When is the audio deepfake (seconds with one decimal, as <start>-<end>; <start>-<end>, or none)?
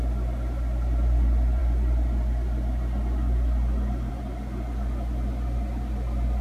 none